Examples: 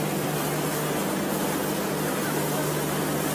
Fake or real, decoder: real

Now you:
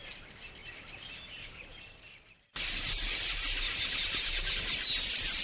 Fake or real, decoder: real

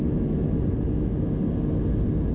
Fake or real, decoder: real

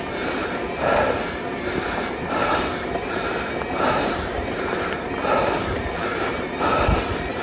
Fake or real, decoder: fake, vocoder, BigVGAN v2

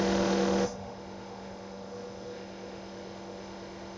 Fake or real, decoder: fake, autoencoder, DAC-VAE